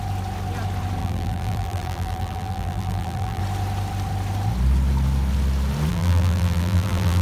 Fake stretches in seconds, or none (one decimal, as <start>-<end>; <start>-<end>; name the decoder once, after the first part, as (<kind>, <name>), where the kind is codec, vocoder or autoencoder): 1.0-3.4 (vocoder, BigVGAN v2); 5.9-7.2